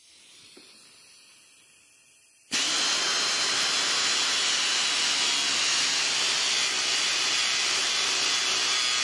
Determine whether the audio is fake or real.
real